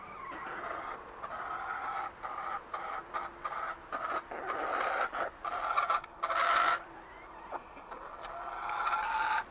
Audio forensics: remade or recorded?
remade